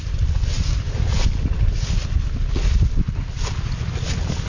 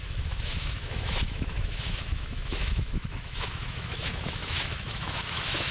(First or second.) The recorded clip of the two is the first